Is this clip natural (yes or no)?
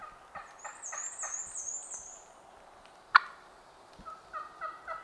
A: yes